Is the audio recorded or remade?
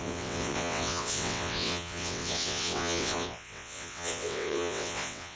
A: remade